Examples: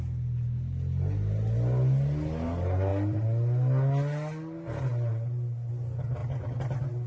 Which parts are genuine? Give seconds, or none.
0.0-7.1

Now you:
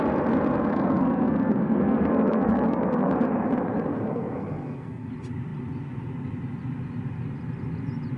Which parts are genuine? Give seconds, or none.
0.0-0.7; 3.1-3.9; 5.1-8.2

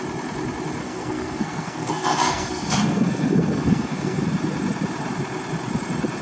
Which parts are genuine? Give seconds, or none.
0.0-0.8; 4.2-6.2

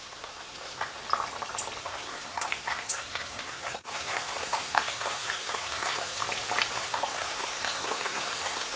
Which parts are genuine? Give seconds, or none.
1.0-1.8; 6.2-6.7

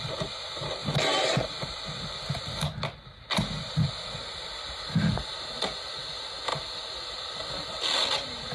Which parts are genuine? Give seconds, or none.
0.0-8.5